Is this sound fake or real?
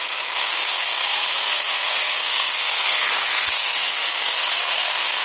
fake